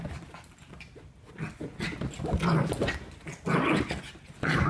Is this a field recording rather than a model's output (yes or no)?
yes